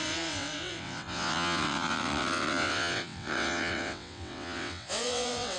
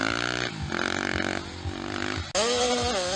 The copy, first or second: first